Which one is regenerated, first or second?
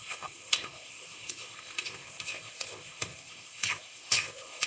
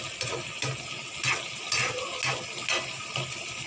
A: first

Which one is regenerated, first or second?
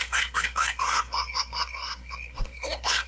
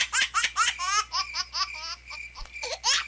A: first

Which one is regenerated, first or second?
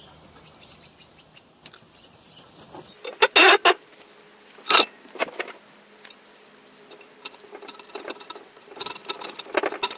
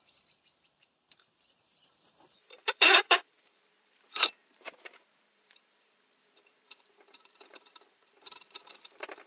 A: second